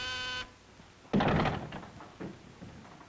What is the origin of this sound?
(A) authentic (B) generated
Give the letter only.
A